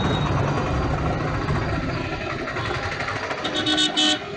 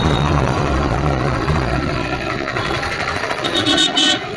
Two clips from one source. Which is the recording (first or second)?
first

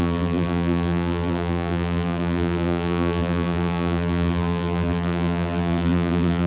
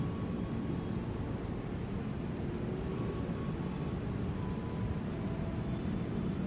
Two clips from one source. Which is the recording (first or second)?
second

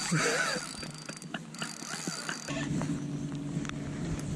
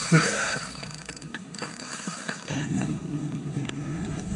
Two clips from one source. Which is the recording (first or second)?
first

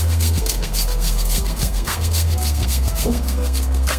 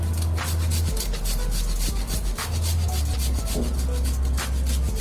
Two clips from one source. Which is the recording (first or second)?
second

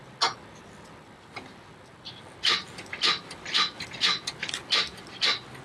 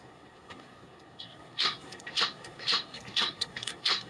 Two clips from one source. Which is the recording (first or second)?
first